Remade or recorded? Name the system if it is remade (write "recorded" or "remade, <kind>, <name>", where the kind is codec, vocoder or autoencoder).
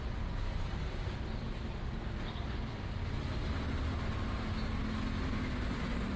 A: recorded